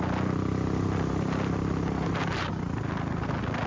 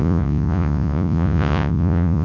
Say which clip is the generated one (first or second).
second